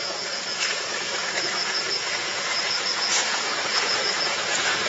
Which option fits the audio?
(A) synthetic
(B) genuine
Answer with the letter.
A